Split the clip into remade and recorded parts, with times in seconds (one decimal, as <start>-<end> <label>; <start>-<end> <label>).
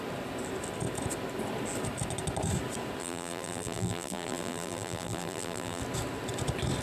0.0-3.0 recorded; 3.0-5.8 remade; 5.8-6.8 recorded